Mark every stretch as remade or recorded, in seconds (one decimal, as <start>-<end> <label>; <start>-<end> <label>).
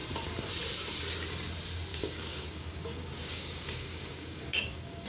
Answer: 0.0-1.9 recorded; 1.9-5.1 remade